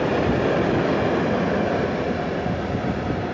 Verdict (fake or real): real